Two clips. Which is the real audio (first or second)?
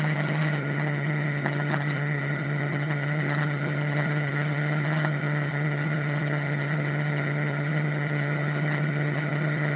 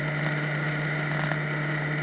second